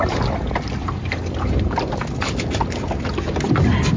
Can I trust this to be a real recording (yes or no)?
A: yes